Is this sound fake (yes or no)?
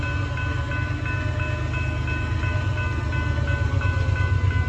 no